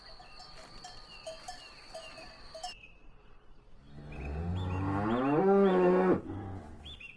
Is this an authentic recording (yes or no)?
yes